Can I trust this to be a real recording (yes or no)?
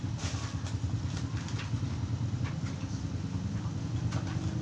yes